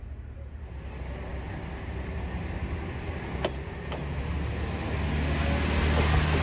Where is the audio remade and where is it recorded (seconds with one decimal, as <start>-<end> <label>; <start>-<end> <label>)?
0.0-6.4 recorded